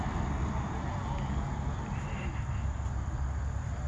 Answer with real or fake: real